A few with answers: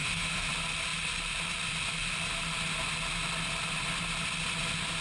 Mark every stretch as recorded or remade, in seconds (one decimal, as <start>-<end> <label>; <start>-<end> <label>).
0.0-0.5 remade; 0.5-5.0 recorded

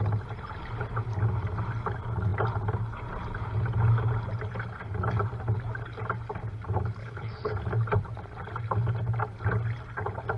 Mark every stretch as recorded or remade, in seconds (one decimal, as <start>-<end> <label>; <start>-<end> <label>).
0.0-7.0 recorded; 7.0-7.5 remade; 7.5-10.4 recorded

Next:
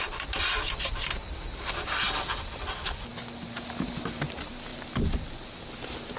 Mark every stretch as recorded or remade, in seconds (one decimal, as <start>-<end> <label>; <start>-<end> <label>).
0.0-6.2 recorded

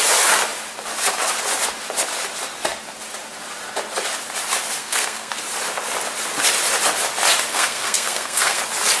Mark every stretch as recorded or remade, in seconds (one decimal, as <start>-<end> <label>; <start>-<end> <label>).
0.0-4.8 recorded; 4.8-5.3 remade; 5.3-7.5 recorded; 7.5-8.6 remade; 8.6-9.0 recorded

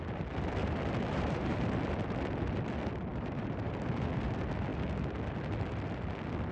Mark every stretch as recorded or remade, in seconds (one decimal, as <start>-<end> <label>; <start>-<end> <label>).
0.0-0.6 recorded; 0.6-1.8 remade; 1.8-3.1 recorded; 3.1-3.7 remade; 3.7-6.5 recorded